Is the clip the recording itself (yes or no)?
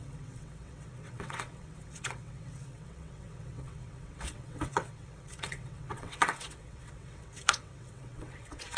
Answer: no